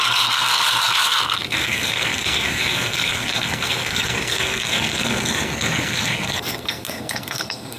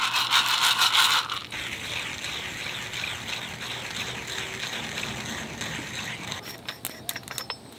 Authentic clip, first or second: second